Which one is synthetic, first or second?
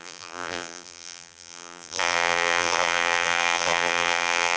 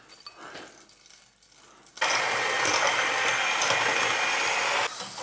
first